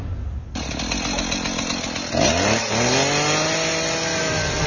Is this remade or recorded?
recorded